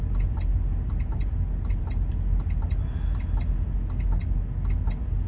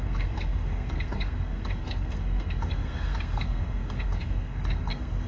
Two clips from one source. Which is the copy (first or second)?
second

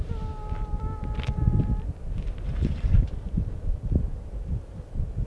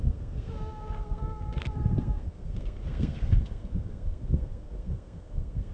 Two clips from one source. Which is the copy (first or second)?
second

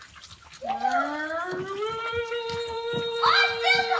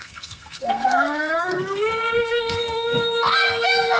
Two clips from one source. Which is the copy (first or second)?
second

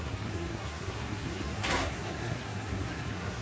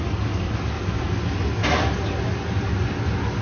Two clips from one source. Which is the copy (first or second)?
first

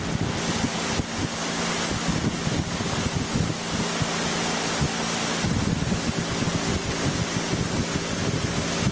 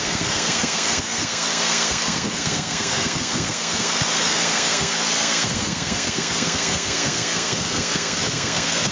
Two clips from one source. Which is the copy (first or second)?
second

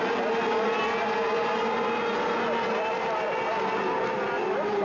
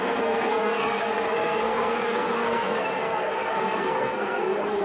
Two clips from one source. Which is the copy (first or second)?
second